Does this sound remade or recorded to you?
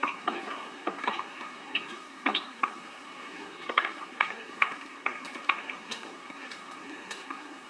remade